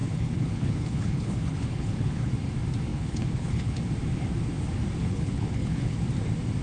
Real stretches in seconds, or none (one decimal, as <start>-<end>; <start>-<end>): 2.3-2.9; 3.8-5.0; 6.0-6.6